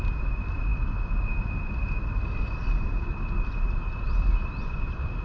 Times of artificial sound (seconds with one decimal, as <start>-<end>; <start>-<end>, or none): none